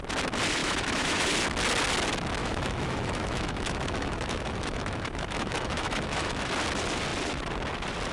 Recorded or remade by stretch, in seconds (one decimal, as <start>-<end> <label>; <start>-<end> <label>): 0.0-0.6 recorded; 0.6-1.3 remade; 1.3-2.4 recorded; 2.4-6.5 remade; 6.5-8.1 recorded